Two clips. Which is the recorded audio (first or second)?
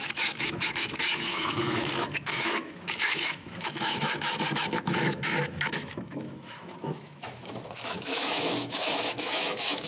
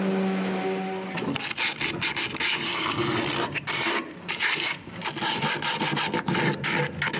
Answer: second